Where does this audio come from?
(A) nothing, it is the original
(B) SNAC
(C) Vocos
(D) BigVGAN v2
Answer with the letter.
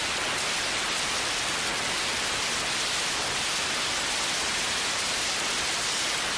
A